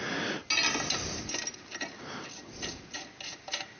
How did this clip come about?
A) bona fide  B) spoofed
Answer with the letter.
A